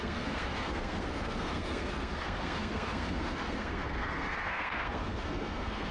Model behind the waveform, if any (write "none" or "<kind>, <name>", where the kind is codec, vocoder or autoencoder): codec, SNAC